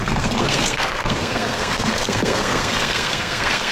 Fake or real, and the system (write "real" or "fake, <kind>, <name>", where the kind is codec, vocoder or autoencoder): fake, codec, SNAC